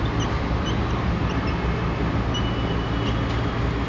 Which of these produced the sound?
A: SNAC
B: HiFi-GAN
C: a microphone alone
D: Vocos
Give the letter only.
C